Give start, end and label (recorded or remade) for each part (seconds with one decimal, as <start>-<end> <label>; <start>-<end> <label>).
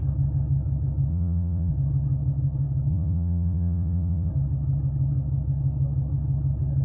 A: 0.0-1.1 recorded; 1.1-1.7 remade; 1.7-2.9 recorded; 2.9-4.3 remade; 4.3-6.8 recorded